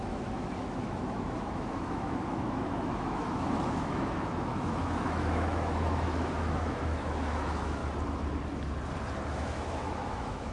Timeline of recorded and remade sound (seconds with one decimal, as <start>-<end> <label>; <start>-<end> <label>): 0.0-7.8 remade; 7.8-9.3 recorded; 9.3-10.5 remade